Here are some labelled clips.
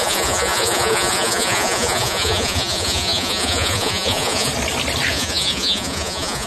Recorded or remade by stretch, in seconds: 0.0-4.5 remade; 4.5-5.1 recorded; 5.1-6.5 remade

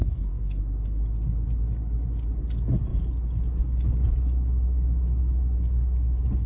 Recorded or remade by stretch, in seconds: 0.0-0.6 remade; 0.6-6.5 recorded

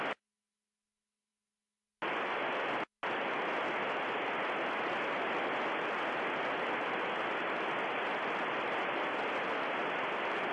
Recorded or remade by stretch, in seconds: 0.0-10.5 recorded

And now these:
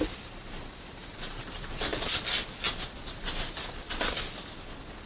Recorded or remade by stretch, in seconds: 0.0-1.9 remade; 1.9-5.1 recorded

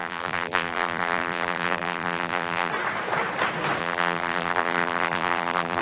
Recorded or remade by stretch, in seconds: 0.0-2.7 remade; 2.7-3.8 recorded; 3.8-5.8 remade

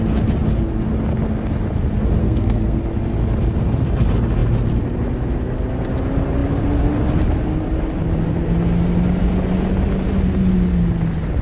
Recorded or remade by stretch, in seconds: 0.0-2.2 recorded; 2.2-2.8 remade; 2.8-11.4 recorded